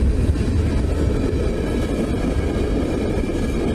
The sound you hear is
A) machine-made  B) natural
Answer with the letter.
B